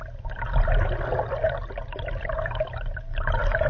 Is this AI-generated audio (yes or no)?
no